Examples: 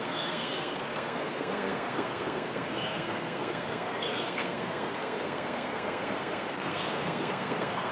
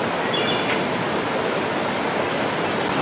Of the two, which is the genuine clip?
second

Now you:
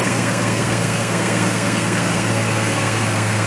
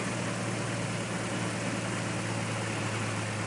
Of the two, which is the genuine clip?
second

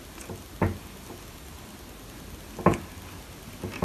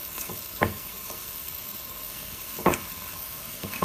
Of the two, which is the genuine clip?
first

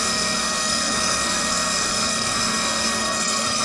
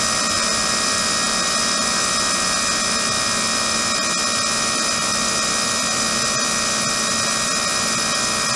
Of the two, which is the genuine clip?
second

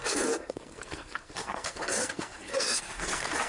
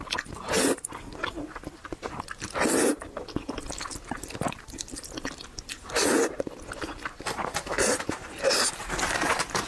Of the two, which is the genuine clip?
second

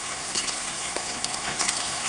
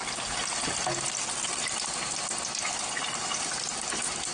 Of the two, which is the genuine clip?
second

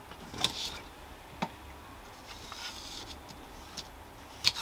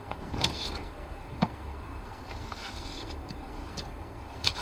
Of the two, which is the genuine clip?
first